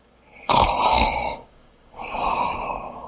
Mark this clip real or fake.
fake